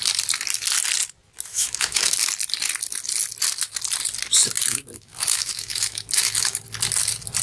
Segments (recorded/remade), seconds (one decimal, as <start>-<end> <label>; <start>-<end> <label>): 0.0-1.5 recorded; 1.5-2.3 remade; 2.3-4.6 recorded; 4.6-6.6 remade; 6.6-7.4 recorded